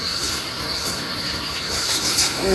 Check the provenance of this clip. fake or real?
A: fake